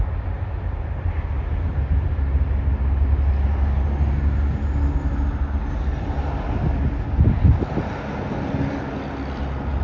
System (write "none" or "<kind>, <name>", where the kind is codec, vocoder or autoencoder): none